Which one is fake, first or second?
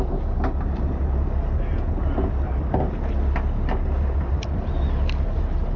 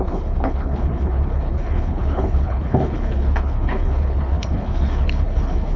second